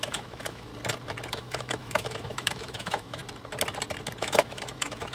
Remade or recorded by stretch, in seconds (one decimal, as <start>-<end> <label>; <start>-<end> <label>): 0.0-0.7 remade; 0.7-1.3 recorded; 1.3-3.2 remade; 3.2-4.2 recorded; 4.2-5.1 remade